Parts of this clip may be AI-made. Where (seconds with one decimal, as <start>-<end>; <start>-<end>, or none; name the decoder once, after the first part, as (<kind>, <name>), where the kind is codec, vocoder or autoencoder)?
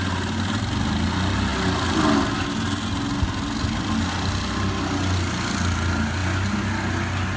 none